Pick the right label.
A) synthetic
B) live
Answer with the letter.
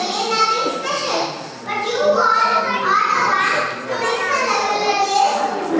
B